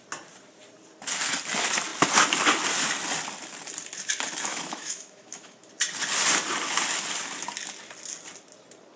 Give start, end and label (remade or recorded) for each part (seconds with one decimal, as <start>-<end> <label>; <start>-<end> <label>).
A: 0.0-4.5 recorded; 4.5-5.7 remade; 5.7-9.0 recorded